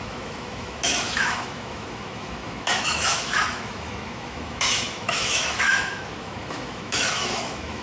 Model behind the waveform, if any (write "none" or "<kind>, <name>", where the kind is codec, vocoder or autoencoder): autoencoder, DAC-VAE